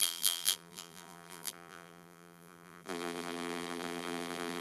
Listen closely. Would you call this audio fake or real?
fake